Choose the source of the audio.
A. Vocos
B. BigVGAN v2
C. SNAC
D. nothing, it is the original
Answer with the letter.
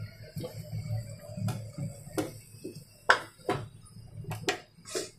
D